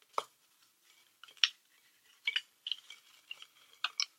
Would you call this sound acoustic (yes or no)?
yes